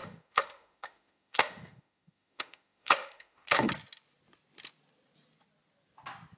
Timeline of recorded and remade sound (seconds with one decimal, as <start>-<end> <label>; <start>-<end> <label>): 0.0-3.7 remade; 3.7-6.4 recorded